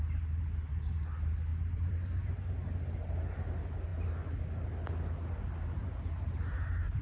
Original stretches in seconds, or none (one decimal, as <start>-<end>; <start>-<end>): 0.0-1.5; 2.3-7.0